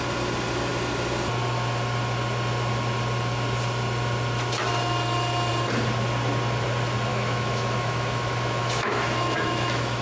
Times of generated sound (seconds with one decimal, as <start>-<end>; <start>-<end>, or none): 7.1-10.0